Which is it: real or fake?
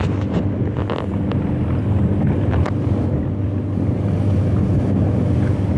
real